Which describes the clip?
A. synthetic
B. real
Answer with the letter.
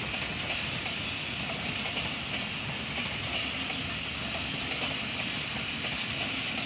B